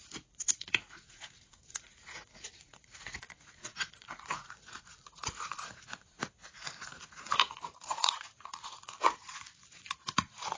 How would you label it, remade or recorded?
remade